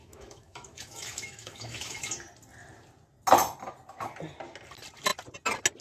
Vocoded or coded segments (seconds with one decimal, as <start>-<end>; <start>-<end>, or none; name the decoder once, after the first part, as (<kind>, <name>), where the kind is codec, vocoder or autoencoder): 0.0-2.1 (autoencoder, DAC-VAE)